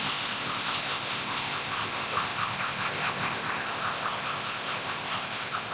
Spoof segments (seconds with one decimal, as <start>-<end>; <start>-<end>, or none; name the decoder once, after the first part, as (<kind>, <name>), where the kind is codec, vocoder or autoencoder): 0.0-5.7 (codec, ZipCodec)